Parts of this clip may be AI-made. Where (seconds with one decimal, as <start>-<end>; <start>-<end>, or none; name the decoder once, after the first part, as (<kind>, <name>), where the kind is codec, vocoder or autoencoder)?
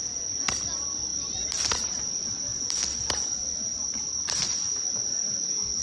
1.1-2.0 (vocoder, BigVGAN v2); 3.7-4.2